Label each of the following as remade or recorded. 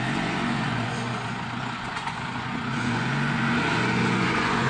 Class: remade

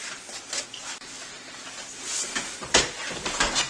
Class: recorded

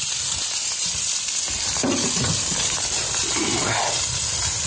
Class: recorded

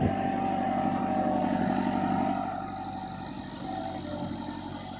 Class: recorded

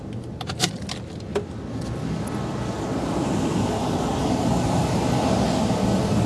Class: recorded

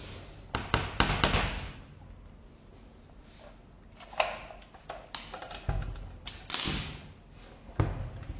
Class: recorded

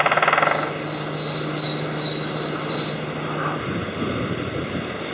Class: recorded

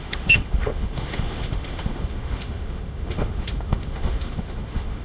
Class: remade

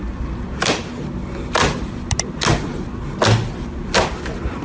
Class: recorded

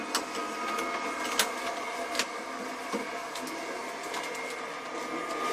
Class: recorded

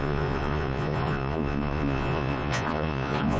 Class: remade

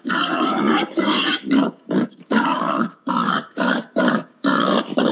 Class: remade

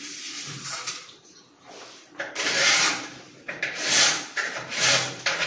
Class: remade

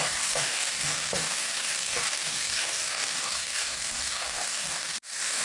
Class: remade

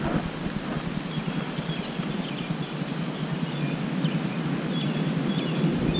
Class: recorded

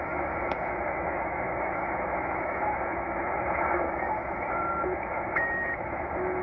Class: remade